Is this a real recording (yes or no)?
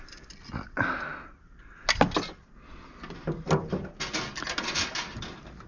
yes